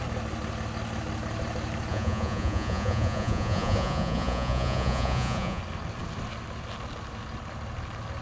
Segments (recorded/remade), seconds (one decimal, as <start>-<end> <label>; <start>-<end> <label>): 0.0-1.9 recorded; 1.9-5.6 remade; 5.6-8.2 recorded